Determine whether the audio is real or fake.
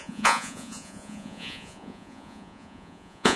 fake